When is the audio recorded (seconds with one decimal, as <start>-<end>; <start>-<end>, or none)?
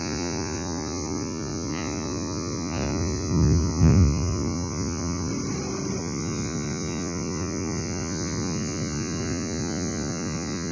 5.3-6.0